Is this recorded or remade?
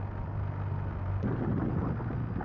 recorded